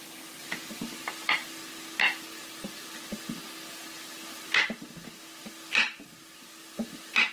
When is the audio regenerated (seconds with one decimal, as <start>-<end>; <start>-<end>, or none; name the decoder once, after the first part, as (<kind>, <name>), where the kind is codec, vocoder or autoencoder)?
none